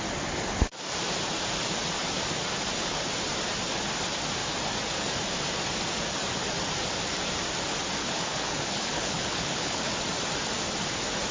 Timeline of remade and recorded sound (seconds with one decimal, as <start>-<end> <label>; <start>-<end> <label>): 0.0-8.0 recorded; 8.0-9.9 remade; 9.9-11.3 recorded